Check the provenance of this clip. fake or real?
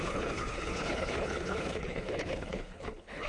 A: fake